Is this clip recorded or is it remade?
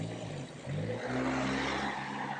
recorded